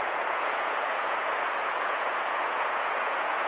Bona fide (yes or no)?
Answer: no